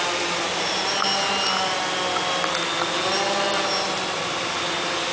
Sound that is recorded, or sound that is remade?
recorded